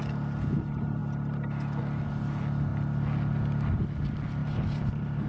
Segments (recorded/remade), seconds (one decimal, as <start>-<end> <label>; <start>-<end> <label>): 0.0-4.4 recorded; 4.4-5.3 remade